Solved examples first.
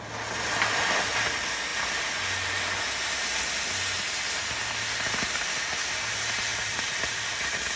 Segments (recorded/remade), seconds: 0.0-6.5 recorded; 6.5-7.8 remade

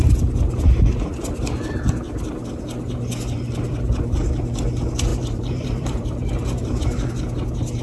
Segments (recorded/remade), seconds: 0.0-5.1 recorded; 5.1-6.8 remade; 6.8-7.8 recorded

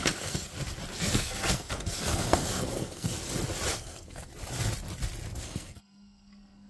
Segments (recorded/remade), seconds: 0.0-0.5 remade; 0.5-1.0 recorded; 1.0-3.1 remade; 3.1-3.7 recorded; 3.7-4.3 remade; 4.3-5.4 recorded; 5.4-6.7 remade

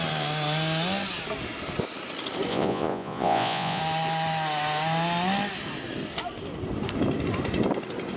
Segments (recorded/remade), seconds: 0.0-2.5 recorded; 2.5-3.8 remade; 3.8-8.2 recorded

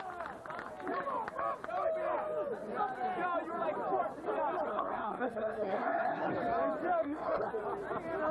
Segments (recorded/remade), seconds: 0.0-4.7 recorded; 4.7-6.3 remade; 6.3-7.0 recorded; 7.0-7.5 remade; 7.5-8.3 recorded